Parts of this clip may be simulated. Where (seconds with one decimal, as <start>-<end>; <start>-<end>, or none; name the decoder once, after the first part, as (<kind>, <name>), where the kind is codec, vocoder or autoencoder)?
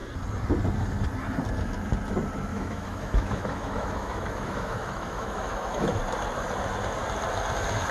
2.5-6.0 (autoencoder, DAC-VAE)